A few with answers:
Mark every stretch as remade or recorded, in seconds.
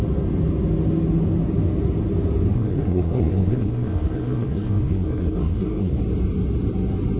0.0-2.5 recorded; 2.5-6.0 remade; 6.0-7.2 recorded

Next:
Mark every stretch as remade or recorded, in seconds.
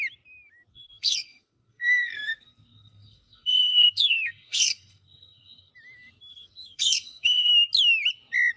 0.0-0.7 recorded; 0.7-5.7 remade; 5.7-6.3 recorded; 6.3-7.5 remade; 7.5-8.6 recorded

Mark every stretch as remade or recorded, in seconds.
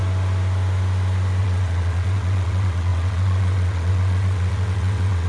0.0-1.4 recorded; 1.4-5.3 remade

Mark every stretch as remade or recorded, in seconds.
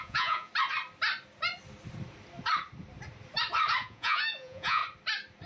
0.0-0.5 remade; 0.5-3.8 recorded; 3.8-4.8 remade; 4.8-5.5 recorded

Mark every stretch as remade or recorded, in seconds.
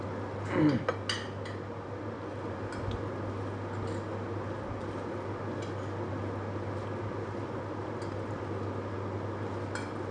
0.0-10.1 recorded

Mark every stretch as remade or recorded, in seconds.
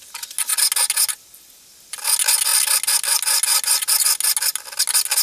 0.0-5.2 recorded